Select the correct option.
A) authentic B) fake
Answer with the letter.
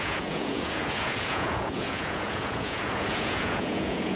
B